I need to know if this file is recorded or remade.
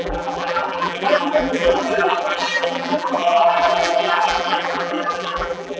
remade